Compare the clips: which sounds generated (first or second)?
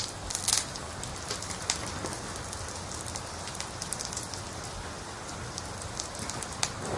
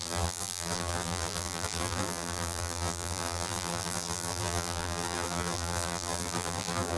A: second